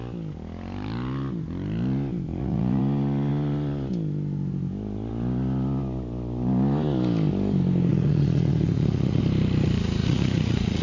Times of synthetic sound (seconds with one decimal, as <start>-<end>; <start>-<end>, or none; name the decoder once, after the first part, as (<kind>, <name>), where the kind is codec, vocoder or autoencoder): 2.3-2.8 (vocoder, Vocos); 7.9-9.2; 10.0-10.8